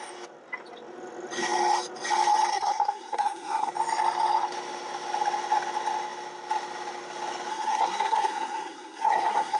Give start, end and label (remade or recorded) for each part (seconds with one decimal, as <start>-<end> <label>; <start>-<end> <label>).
0.0-2.5 recorded; 2.5-3.7 remade; 3.7-7.5 recorded; 7.5-9.6 remade